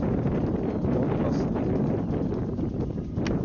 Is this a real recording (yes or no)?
yes